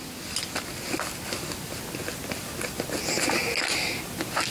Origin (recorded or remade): recorded